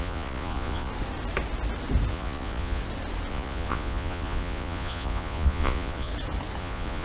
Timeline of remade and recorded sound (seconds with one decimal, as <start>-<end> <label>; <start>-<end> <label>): 0.0-0.9 remade; 0.9-2.1 recorded; 2.1-2.8 remade; 2.8-3.3 recorded; 3.3-6.1 remade; 6.1-6.6 recorded; 6.6-7.0 remade